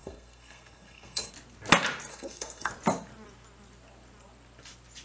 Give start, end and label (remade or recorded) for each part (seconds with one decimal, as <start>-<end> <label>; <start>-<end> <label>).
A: 0.0-1.3 remade; 1.3-2.1 recorded; 2.1-2.7 remade; 2.7-5.0 recorded